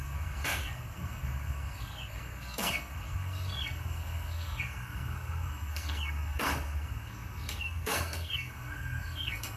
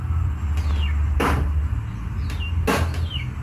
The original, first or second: second